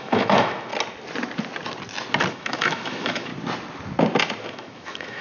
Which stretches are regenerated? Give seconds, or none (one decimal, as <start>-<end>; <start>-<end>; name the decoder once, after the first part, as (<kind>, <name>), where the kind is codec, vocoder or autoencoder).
0.0-0.7 (autoencoder, DAC-VAE); 2.3-3.3; 4.5-5.2